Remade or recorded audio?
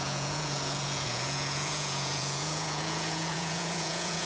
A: remade